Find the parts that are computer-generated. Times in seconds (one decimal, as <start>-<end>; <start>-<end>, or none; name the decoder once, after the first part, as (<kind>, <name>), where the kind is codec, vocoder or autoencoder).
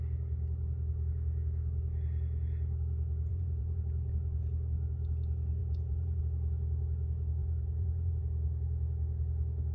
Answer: 3.3-3.8 (vocoder, Vocos); 5.6-6.2; 7.4-8.2